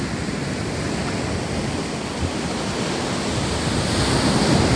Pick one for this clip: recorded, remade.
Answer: recorded